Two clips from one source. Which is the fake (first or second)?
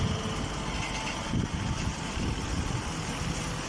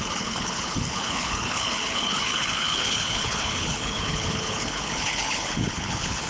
second